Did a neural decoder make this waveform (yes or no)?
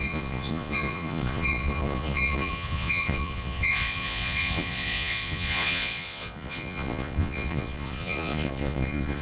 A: yes